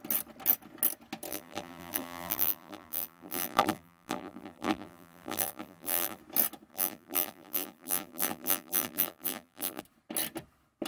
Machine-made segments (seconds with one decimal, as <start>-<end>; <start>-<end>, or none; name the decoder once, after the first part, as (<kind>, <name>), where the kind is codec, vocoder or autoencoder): 1.3-6.2 (vocoder, BigVGAN v2); 6.7-9.8